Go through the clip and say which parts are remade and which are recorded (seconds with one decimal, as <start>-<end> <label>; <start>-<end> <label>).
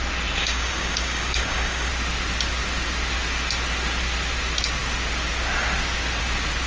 0.0-0.4 recorded; 0.4-1.9 remade; 1.9-6.7 recorded